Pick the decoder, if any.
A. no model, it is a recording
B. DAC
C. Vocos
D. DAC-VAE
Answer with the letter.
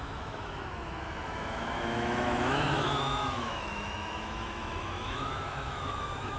D